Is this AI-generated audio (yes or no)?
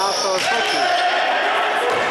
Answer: no